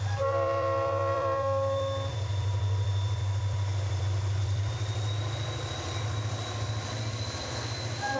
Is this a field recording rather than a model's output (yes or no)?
no